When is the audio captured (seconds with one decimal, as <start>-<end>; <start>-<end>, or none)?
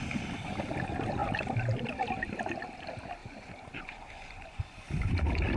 0.0-3.2; 4.9-5.6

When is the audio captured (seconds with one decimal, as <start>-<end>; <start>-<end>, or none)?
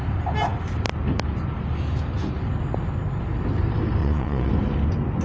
0.0-4.0; 4.5-5.2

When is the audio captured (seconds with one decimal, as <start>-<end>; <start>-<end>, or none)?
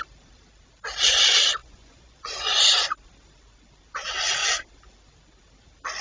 0.0-1.6; 2.6-6.0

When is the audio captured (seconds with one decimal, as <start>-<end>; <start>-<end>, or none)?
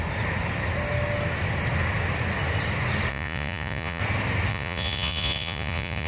0.0-3.1; 4.0-4.5